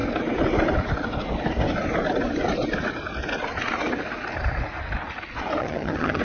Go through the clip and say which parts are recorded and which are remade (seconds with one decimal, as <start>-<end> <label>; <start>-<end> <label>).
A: 0.0-5.6 recorded; 5.6-6.2 remade